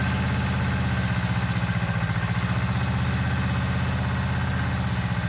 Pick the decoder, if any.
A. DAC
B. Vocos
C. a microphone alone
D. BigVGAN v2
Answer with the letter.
C